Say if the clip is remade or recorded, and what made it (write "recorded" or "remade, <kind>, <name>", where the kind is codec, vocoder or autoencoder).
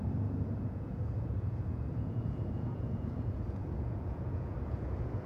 remade, vocoder, Vocos